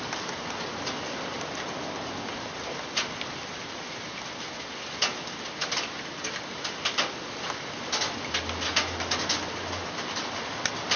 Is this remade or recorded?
recorded